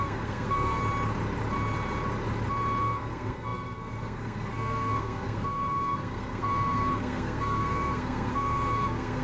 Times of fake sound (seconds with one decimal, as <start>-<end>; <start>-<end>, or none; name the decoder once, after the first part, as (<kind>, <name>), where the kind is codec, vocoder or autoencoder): 0.0-0.8 (codec, SNAC); 2.8-9.2